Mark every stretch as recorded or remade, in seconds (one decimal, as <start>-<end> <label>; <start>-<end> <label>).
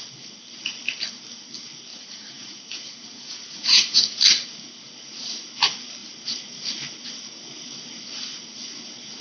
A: 0.0-1.9 recorded; 1.9-4.2 remade; 4.2-9.2 recorded